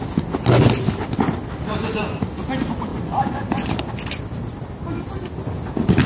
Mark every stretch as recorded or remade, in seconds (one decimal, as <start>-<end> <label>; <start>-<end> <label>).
0.0-1.7 recorded; 1.7-2.2 remade; 2.2-2.9 recorded; 2.9-3.7 remade; 3.7-6.1 recorded